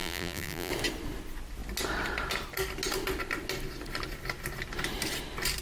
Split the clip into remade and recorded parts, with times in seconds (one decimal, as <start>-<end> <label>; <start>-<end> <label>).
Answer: 0.0-0.7 remade; 0.7-5.6 recorded